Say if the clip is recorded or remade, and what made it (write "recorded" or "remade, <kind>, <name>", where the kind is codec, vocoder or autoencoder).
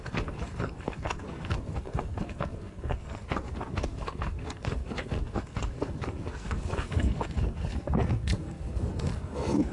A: remade, codec, SNAC